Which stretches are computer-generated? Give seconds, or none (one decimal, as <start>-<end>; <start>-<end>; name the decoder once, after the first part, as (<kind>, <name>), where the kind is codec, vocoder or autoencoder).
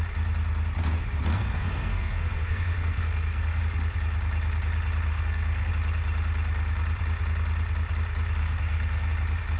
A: 1.3-3.6 (codec, SNAC); 5.1-5.7; 8.4-9.1